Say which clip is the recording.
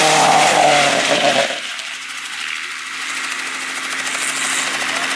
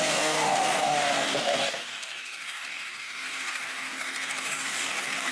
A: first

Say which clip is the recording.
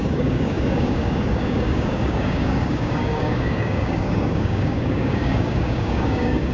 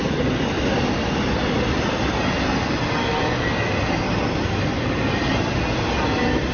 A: second